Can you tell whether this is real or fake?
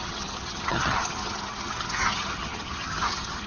fake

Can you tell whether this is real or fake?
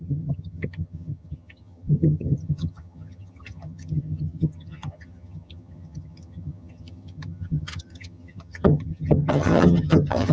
fake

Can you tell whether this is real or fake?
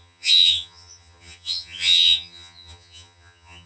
fake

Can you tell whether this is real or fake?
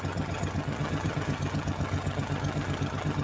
fake